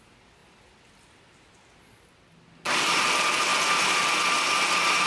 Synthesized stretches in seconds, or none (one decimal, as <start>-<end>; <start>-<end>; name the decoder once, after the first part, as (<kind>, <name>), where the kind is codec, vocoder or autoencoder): none